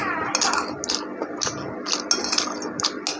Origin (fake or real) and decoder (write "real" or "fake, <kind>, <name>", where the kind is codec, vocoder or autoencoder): real